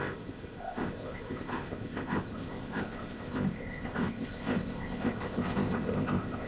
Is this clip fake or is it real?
fake